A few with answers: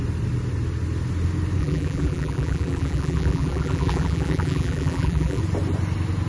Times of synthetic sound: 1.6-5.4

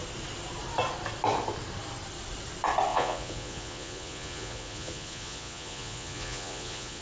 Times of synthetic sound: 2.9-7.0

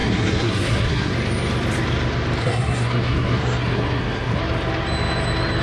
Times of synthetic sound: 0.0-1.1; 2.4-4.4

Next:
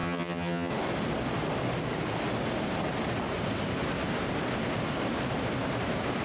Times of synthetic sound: 0.0-0.7

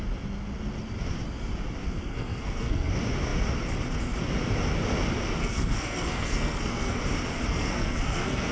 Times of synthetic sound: 1.8-2.9; 5.4-7.0; 7.5-8.5

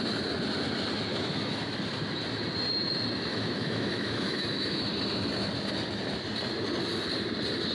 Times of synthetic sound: 1.1-1.7; 3.3-4.9

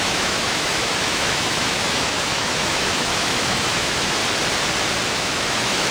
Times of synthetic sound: 0.0-4.2; 5.1-5.9

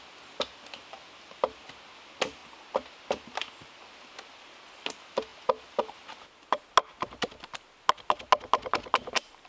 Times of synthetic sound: none